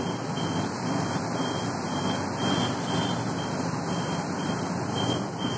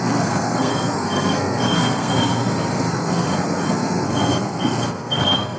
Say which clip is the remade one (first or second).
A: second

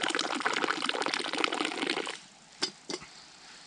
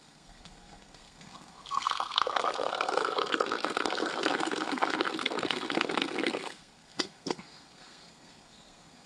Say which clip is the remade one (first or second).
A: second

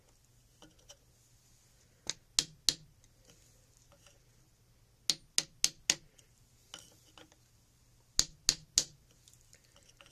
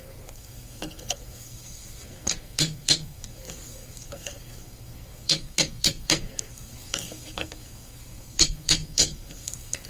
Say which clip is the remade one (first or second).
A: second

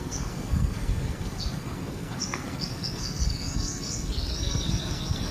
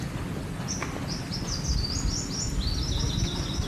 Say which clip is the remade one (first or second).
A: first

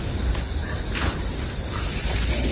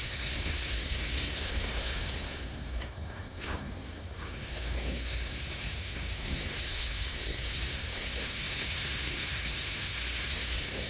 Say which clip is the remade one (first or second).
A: second